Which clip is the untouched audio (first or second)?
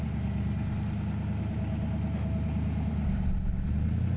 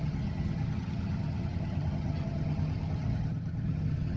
first